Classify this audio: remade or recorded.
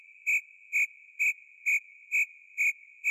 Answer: recorded